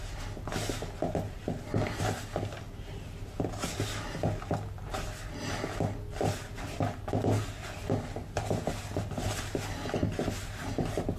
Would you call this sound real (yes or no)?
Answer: yes